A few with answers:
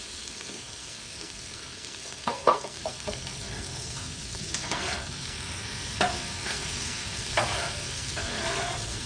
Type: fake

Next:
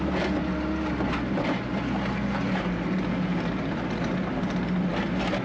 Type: real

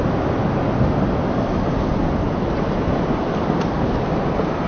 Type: real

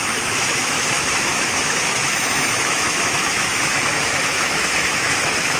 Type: fake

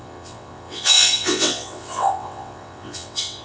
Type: fake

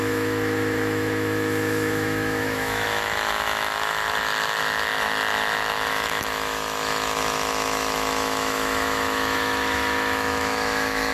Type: fake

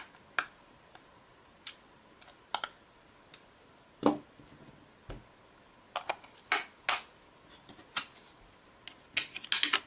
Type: real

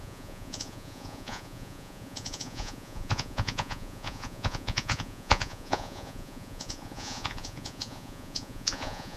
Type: fake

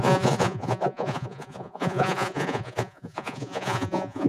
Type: fake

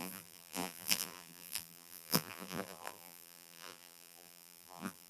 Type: fake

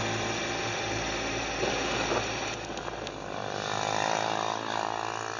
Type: real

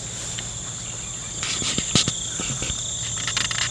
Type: real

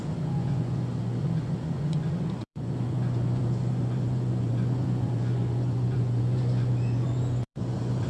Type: fake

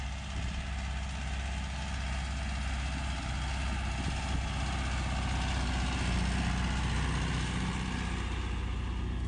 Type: real